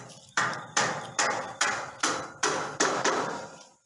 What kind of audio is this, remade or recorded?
remade